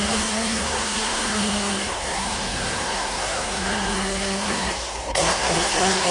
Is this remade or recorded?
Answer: remade